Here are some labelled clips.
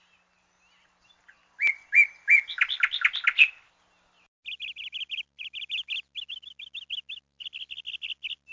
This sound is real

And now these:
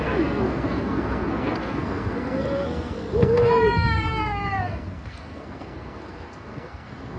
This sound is fake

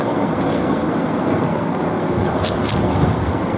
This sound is fake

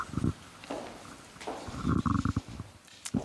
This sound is real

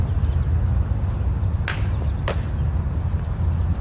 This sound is real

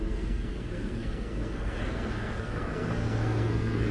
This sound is fake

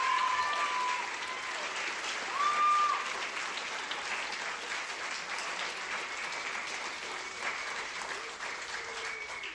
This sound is real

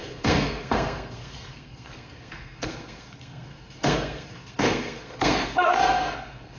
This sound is fake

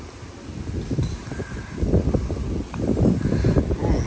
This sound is real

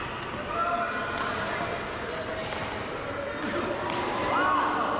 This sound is real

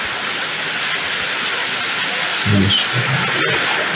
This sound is real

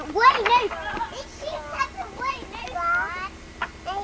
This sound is real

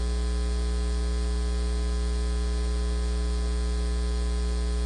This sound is real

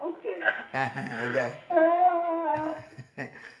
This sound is fake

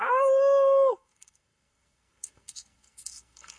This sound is fake